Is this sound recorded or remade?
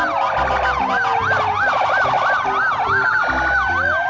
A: recorded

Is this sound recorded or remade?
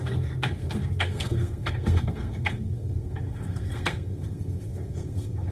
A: remade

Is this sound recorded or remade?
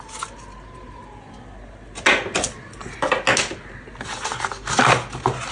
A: recorded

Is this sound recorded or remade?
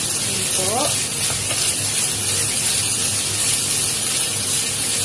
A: recorded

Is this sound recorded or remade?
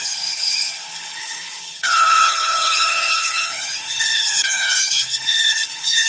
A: remade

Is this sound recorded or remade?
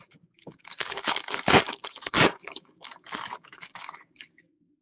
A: remade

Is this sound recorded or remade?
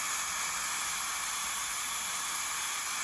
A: recorded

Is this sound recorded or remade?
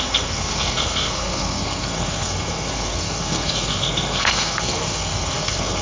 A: remade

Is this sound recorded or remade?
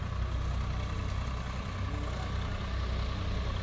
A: recorded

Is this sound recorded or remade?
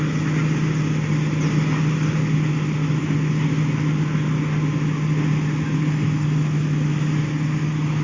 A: recorded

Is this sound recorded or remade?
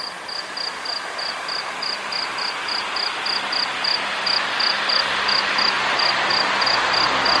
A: recorded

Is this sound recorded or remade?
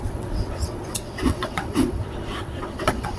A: remade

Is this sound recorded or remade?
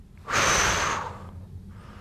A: recorded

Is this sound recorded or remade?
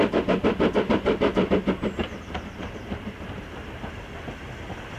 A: recorded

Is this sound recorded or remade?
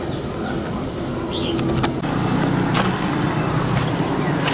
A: recorded